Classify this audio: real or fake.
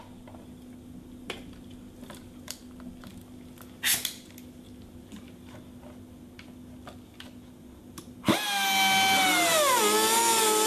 real